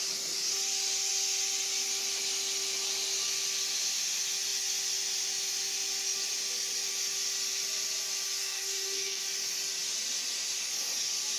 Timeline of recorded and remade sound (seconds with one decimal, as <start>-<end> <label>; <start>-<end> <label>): 0.0-8.4 recorded; 8.4-9.2 remade; 9.2-11.4 recorded